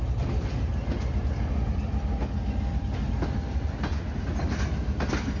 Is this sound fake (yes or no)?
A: no